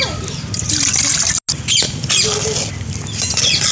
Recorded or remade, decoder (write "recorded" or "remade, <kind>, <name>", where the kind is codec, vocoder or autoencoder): recorded